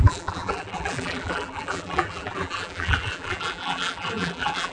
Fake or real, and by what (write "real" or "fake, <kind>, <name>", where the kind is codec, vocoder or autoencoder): fake, vocoder, BigVGAN v2